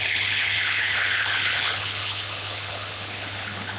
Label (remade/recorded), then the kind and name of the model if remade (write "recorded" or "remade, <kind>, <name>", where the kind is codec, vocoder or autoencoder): remade, codec, HILCodec